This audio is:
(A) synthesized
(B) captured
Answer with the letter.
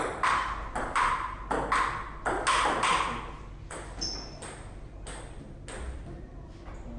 B